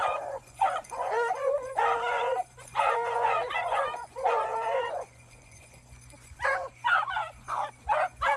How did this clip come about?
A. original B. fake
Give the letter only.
B